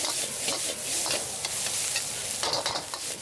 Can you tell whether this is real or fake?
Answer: real